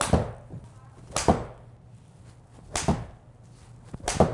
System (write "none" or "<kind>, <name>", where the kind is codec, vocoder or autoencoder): none